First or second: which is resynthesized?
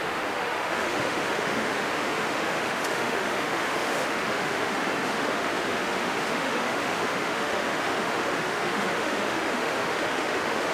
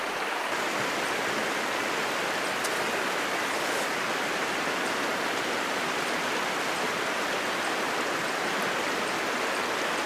first